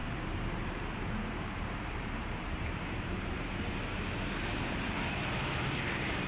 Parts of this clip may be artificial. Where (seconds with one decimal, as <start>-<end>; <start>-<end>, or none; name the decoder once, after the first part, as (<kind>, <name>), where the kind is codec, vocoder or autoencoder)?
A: 0.0-3.8 (vocoder, BigVGAN v2); 4.6-6.3